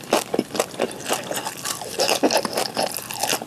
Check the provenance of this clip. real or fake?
real